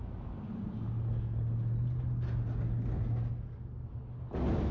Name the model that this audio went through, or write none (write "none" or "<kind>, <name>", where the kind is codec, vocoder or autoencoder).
none